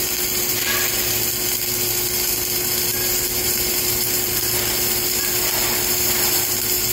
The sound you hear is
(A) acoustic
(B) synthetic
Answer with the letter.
A